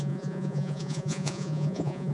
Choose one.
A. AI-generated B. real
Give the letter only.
A